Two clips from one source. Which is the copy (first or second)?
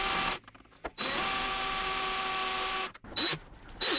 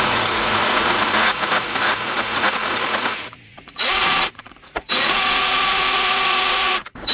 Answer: second